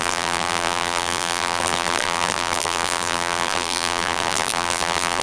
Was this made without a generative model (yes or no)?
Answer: no